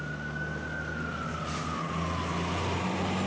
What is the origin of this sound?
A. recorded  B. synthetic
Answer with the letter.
A